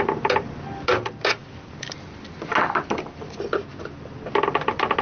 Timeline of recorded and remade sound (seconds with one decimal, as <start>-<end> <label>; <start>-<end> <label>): 0.0-5.0 recorded